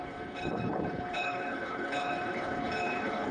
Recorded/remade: remade